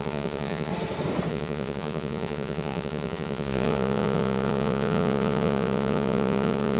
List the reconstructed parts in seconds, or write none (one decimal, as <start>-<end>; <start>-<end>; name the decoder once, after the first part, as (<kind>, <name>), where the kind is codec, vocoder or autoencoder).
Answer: 0.0-0.7 (vocoder, Vocos); 1.3-6.8